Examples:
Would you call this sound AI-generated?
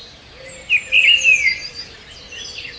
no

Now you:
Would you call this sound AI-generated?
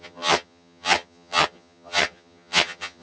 yes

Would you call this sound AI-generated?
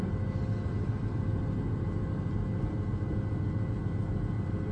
no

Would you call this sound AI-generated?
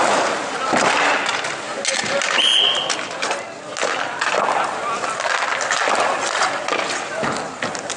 no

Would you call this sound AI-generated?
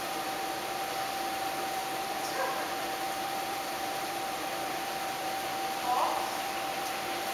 yes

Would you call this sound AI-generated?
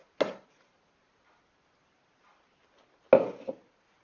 no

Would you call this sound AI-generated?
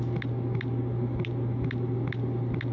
no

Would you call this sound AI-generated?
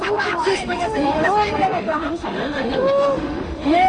yes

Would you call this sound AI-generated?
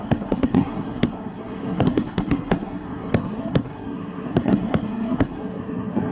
yes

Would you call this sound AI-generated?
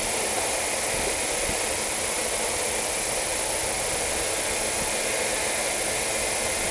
no